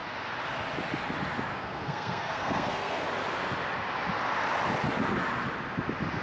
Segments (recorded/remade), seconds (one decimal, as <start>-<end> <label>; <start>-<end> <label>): 0.0-1.5 recorded; 1.5-3.0 remade; 3.0-6.2 recorded